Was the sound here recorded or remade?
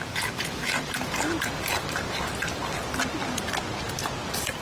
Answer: recorded